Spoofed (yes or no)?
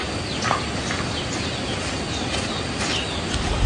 no